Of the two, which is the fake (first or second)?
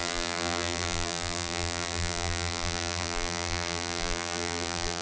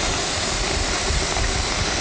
first